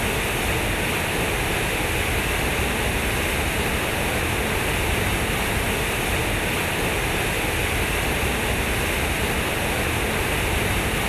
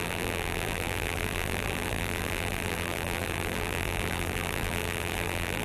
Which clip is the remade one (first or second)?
second